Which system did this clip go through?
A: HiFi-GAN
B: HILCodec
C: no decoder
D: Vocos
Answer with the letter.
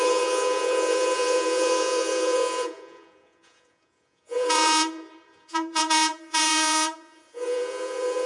D